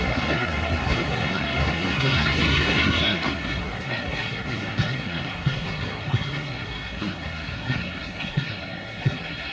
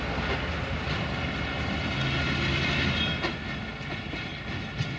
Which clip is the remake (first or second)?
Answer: first